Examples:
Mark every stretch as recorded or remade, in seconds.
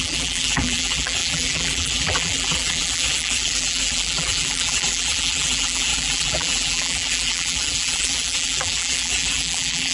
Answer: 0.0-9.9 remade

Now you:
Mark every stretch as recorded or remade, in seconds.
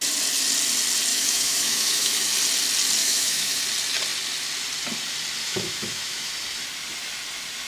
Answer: 0.0-1.1 recorded; 1.1-2.3 remade; 2.3-3.0 recorded; 3.0-3.6 remade; 3.6-5.4 recorded; 5.4-6.3 remade; 6.3-7.7 recorded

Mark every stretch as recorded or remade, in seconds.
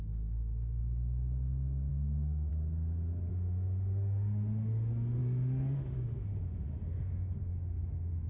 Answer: 0.0-0.8 remade; 0.8-1.9 recorded; 1.9-2.5 remade; 2.5-3.3 recorded; 3.3-8.3 remade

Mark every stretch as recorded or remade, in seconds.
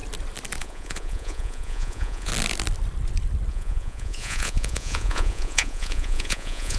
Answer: 0.0-0.6 recorded; 0.6-2.3 remade; 2.3-3.5 recorded; 3.5-6.8 remade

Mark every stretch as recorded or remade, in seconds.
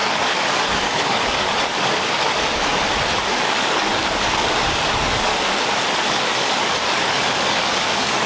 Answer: 0.0-5.3 remade; 5.3-6.1 recorded; 6.1-8.3 remade